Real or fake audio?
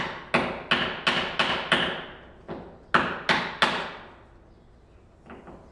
real